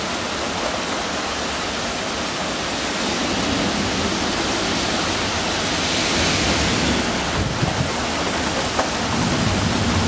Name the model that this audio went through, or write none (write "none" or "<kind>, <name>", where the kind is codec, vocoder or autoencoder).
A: none